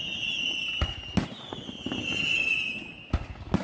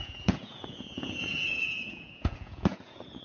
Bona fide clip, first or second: first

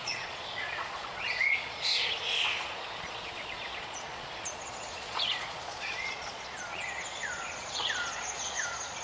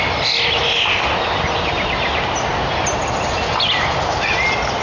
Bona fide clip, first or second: second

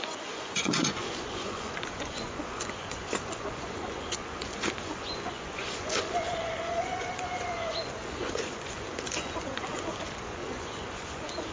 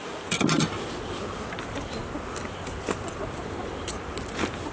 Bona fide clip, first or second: second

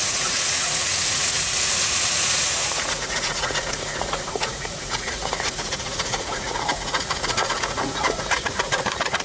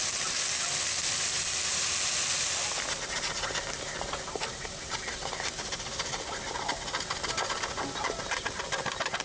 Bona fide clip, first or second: second